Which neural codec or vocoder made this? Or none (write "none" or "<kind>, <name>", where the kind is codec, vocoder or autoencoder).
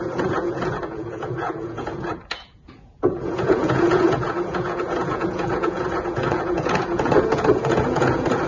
vocoder, Vocos